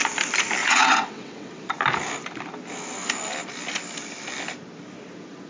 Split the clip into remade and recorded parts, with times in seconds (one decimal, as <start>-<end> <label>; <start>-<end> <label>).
0.0-0.6 recorded; 0.6-1.6 remade; 1.6-5.5 recorded

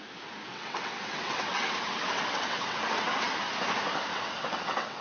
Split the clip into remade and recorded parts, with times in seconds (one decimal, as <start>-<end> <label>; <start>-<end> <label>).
0.0-0.5 recorded; 0.5-3.3 remade; 3.3-4.1 recorded; 4.1-5.0 remade

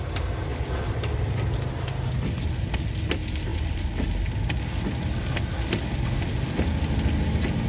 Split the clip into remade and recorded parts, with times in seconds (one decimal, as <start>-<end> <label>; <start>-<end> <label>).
0.0-7.7 recorded

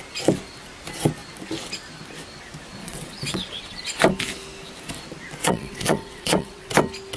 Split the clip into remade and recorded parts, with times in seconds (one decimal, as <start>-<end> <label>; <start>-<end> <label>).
0.0-2.8 recorded; 2.8-4.0 remade; 4.0-5.4 recorded; 5.4-6.7 remade; 6.7-7.2 recorded